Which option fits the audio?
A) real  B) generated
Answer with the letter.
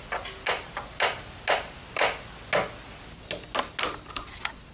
A